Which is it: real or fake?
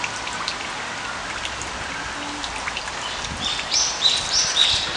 real